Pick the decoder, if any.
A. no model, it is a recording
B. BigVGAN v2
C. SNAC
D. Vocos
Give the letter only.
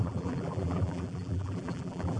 B